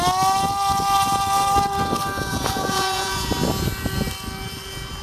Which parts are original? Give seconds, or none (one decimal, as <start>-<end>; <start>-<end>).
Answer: 0.0-2.3; 3.3-5.0